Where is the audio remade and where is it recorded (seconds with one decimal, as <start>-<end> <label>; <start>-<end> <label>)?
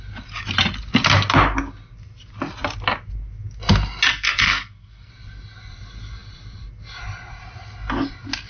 0.0-4.1 recorded; 4.1-5.1 remade; 5.1-8.5 recorded